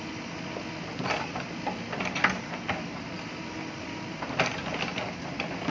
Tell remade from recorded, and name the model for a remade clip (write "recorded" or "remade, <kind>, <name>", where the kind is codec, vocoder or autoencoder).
recorded